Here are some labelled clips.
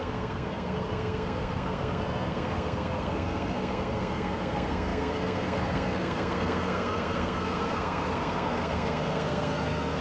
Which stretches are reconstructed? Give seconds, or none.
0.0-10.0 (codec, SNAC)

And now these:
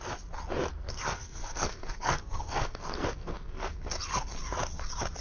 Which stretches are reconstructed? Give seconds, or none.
0.7-3.8 (codec, SNAC)

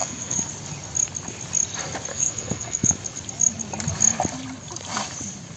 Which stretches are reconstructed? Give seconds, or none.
0.0-0.5 (codec, SNAC); 2.1-2.9

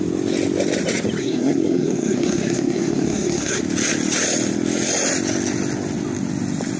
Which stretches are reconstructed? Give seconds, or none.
1.2-3.6 (codec, SNAC)

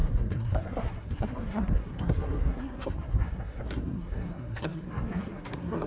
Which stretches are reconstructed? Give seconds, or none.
0.0-5.9 (codec, SNAC)

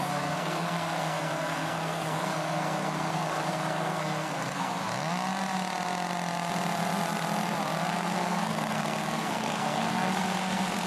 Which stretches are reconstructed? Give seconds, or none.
0.0-4.8 (codec, SNAC); 7.9-10.9

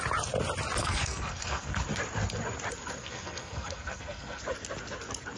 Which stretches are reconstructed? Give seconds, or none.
0.8-1.8 (codec, SNAC); 3.0-4.4

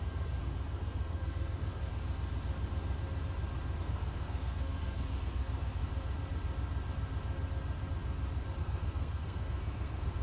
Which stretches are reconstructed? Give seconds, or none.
0.0-1.8 (codec, SNAC); 3.8-5.8; 8.6-10.2